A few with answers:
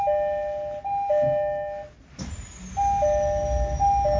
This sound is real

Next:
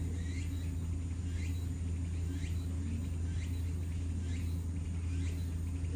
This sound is real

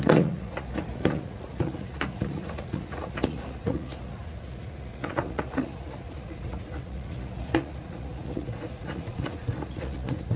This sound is fake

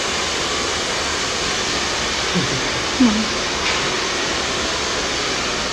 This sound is real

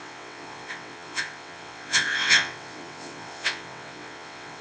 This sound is fake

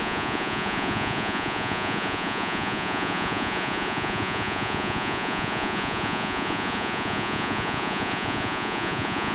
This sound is fake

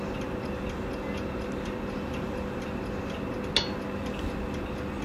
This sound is real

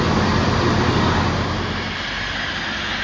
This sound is real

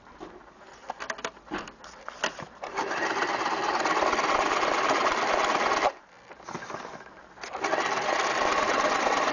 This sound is real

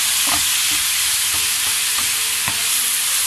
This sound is real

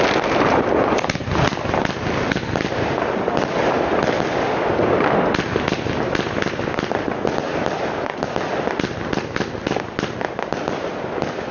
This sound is real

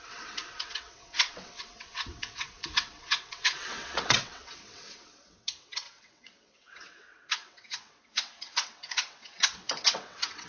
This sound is fake